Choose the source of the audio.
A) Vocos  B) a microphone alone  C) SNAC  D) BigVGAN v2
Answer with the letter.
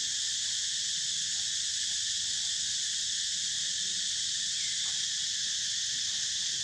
D